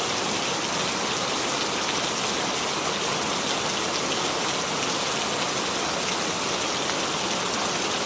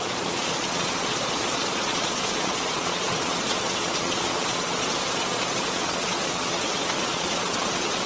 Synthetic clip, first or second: second